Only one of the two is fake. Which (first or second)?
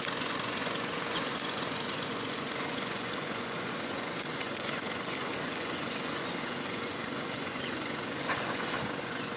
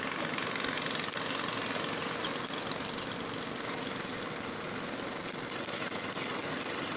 first